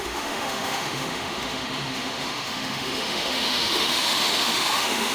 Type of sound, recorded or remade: remade